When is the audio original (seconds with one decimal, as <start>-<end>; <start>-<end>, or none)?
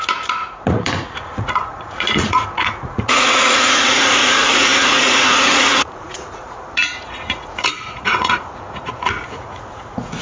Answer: none